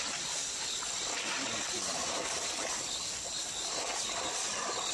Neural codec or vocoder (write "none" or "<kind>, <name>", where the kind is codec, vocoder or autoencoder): none